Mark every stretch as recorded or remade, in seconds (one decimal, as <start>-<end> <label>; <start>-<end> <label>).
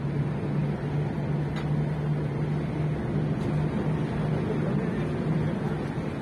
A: 0.0-6.2 recorded